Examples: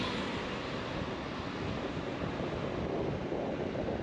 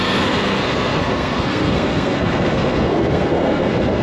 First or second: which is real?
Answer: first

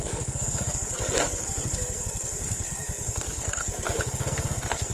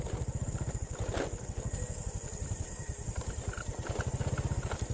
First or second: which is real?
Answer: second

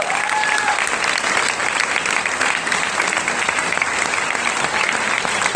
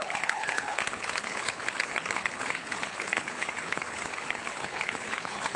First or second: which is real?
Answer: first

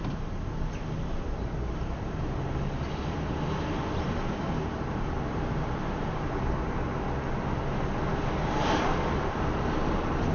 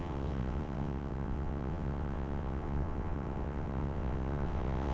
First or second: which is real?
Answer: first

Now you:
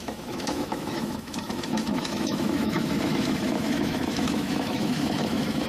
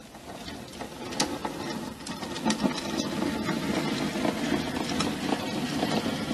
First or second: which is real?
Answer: second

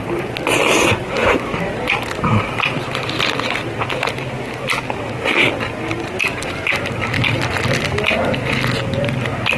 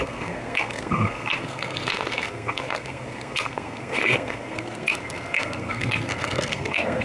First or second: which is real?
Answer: first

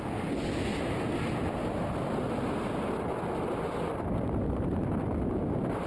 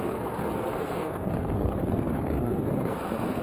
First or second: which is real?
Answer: first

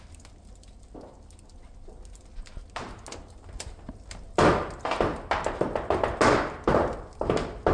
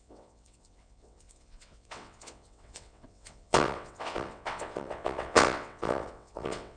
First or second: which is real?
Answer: first